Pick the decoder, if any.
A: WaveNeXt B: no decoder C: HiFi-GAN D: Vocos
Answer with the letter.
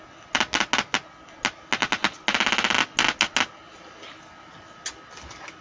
B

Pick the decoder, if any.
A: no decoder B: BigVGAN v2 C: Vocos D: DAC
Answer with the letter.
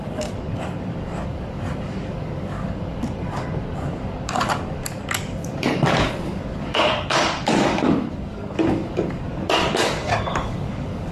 D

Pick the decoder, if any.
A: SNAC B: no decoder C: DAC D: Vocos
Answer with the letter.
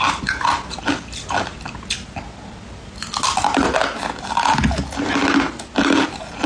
B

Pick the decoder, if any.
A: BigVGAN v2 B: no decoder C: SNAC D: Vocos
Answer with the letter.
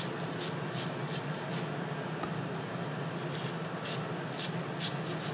B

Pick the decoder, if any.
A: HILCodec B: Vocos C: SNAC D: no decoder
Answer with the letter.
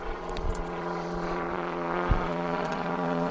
B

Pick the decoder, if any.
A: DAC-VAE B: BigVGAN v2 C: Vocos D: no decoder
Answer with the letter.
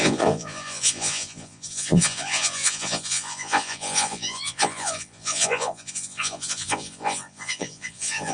C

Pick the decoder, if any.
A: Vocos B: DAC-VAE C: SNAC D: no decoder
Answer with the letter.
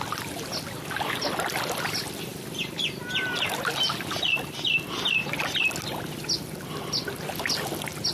D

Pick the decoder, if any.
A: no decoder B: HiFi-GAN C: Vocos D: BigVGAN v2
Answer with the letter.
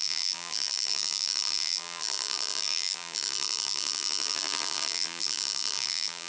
D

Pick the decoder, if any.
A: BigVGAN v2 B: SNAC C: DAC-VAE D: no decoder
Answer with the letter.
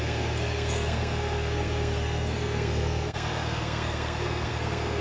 B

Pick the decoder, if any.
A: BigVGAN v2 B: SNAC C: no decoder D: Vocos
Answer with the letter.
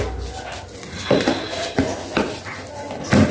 C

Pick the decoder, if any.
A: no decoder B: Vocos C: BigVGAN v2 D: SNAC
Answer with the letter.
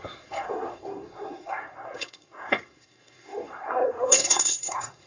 D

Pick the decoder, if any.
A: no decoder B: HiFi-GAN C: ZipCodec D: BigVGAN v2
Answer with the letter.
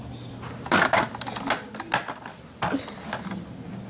A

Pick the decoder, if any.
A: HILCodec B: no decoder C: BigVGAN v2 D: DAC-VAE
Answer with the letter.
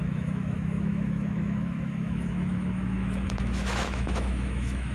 D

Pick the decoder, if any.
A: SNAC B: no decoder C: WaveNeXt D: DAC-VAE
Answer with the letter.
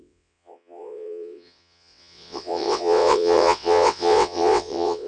C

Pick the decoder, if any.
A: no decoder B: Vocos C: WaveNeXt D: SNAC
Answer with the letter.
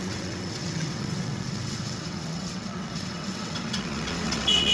C